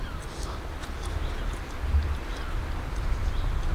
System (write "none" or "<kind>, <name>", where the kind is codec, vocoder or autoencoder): none